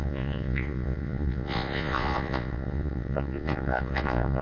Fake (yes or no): yes